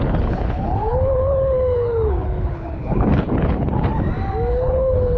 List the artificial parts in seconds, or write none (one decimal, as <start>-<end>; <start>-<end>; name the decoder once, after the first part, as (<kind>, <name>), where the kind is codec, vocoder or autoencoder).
0.0-3.9 (codec, HILCodec); 4.5-5.2